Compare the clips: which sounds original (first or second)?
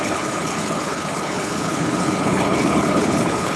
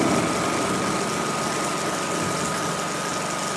second